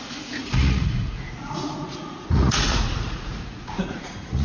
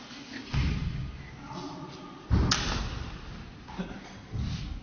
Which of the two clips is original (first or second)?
second